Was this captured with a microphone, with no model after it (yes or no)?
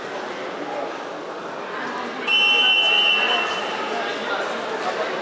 yes